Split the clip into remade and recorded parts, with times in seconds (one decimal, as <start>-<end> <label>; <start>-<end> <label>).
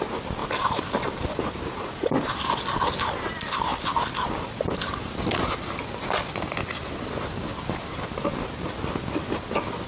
0.0-0.4 recorded; 0.4-2.5 remade; 2.5-7.5 recorded; 7.5-8.6 remade; 8.6-9.9 recorded